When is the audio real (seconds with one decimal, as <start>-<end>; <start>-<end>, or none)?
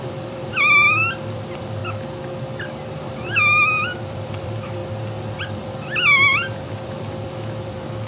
1.8-2.9; 4.8-5.4